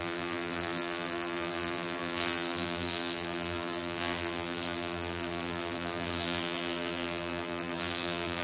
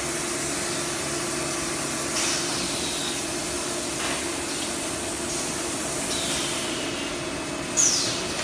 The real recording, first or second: second